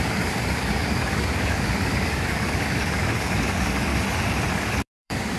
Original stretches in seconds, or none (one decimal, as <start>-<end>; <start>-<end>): 3.9-4.5